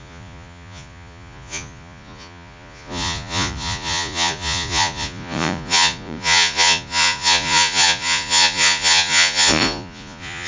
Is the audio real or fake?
fake